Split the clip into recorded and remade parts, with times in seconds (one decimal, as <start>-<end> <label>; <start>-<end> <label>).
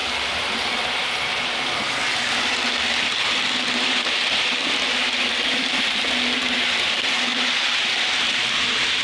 0.0-4.7 remade; 4.7-7.3 recorded; 7.3-7.8 remade; 7.8-9.0 recorded